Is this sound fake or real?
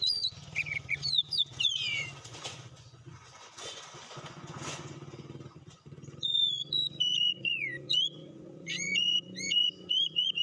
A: fake